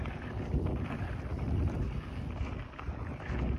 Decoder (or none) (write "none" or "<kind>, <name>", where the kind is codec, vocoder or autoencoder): none